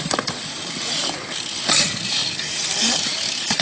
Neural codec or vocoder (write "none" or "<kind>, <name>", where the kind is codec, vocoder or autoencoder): vocoder, BigVGAN v2